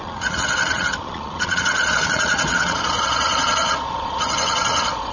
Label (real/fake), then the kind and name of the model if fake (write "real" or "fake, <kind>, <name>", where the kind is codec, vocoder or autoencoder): fake, vocoder, Vocos